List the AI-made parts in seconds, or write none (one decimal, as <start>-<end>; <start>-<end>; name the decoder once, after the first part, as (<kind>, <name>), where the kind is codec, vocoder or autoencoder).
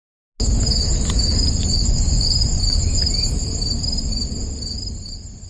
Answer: 1.3-3.0 (vocoder, Vocos)